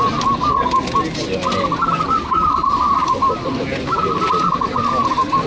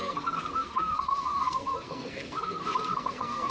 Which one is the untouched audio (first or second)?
first